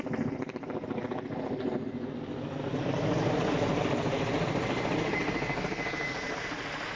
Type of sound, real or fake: real